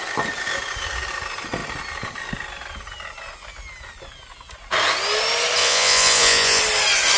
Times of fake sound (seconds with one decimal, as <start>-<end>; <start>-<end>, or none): 5.6-6.6